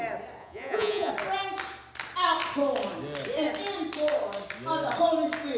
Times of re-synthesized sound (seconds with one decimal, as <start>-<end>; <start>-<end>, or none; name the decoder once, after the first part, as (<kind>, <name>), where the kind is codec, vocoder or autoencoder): 0.4-1.1 (vocoder, Vocos)